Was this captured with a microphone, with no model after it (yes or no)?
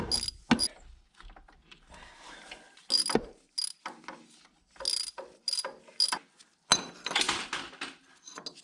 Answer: yes